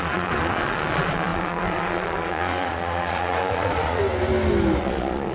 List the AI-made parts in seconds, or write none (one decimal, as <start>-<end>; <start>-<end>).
0.0-4.0; 4.8-5.3